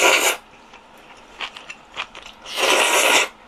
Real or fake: real